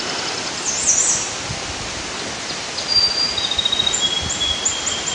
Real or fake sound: real